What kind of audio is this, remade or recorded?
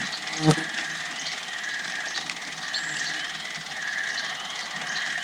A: recorded